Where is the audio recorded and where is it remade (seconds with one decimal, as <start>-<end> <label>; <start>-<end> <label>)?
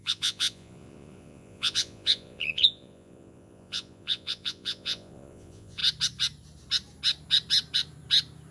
0.0-5.8 remade; 5.8-8.5 recorded